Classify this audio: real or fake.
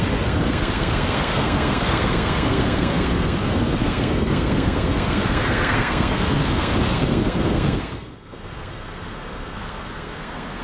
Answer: fake